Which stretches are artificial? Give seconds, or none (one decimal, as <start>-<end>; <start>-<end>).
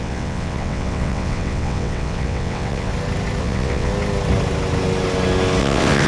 0.0-2.9; 3.4-3.9; 5.6-6.1